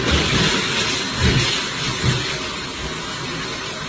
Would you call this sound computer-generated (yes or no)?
no